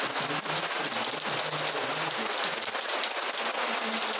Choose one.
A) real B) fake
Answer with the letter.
A